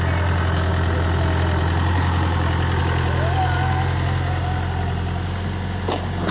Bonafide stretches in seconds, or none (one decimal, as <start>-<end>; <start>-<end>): 0.0-6.3